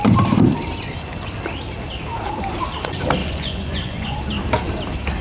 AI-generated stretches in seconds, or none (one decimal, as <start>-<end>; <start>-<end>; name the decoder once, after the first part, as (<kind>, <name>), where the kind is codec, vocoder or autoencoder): 3.2-4.2 (vocoder, Vocos)